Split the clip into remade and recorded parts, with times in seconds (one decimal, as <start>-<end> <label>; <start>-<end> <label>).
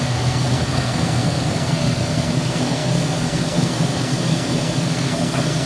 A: 0.0-5.7 remade